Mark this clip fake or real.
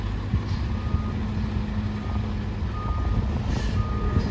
real